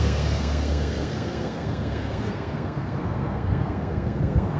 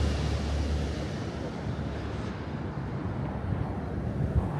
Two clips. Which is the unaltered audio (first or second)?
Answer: second